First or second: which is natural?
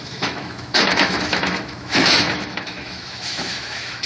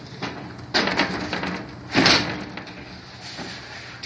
second